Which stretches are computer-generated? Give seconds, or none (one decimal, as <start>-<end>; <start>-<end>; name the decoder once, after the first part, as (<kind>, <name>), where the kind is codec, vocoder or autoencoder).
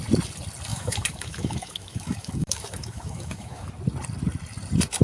0.7-3.7 (autoencoder, DAC-VAE)